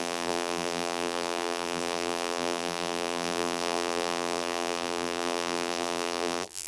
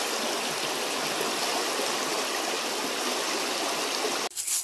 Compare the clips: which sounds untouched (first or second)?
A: second